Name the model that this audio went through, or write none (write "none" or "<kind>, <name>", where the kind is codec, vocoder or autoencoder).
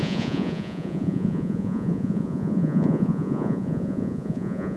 vocoder, Vocos